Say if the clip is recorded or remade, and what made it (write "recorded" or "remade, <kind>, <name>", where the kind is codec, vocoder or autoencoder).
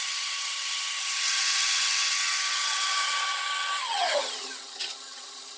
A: remade, vocoder, HiFi-GAN